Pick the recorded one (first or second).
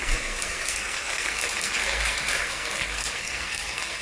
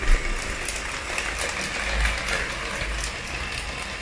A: second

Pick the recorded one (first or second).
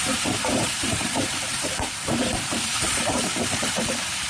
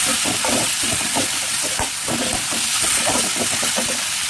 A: second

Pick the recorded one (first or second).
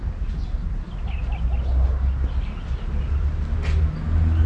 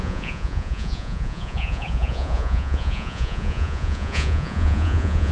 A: first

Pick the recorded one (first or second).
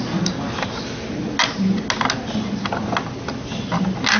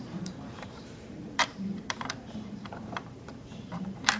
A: first